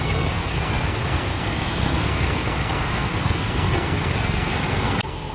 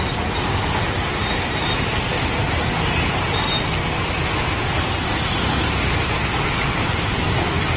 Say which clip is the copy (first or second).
first